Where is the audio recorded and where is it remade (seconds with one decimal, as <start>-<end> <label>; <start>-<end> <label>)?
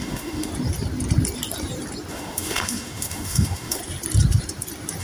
0.0-0.5 remade; 0.5-2.1 recorded; 2.1-3.8 remade; 3.8-5.0 recorded